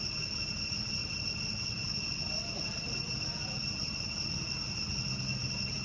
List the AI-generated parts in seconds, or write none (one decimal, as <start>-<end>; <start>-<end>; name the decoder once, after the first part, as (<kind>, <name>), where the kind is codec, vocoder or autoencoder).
none